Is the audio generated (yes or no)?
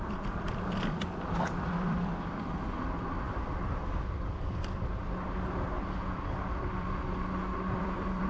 yes